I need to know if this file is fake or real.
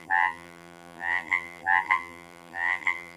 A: fake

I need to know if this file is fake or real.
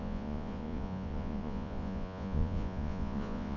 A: fake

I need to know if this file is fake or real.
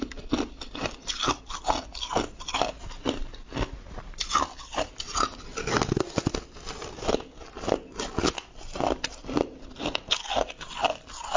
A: real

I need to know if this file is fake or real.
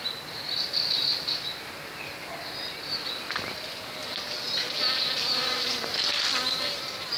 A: real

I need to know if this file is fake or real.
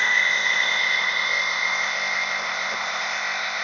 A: fake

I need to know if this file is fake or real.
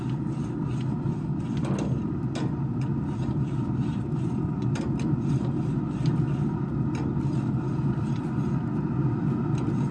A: real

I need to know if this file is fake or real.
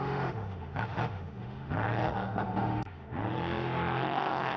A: fake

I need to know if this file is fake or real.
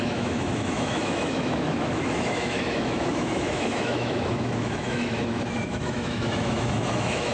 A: fake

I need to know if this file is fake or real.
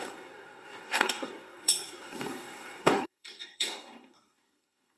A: fake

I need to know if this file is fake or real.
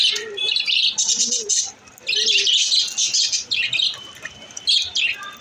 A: real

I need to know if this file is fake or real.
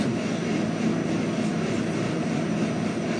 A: real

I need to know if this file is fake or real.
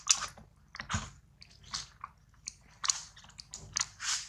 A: real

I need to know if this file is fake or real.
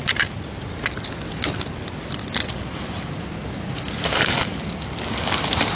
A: real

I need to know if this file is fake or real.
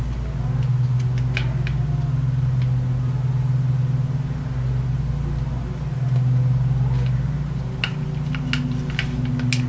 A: real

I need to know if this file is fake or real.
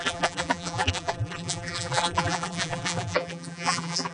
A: fake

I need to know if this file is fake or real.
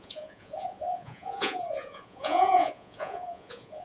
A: fake